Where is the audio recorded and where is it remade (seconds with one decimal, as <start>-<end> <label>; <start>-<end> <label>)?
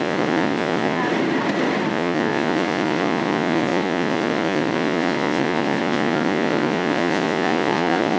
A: 0.0-1.0 remade; 1.0-1.9 recorded; 1.9-8.2 remade